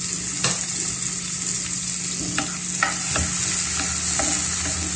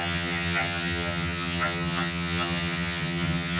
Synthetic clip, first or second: second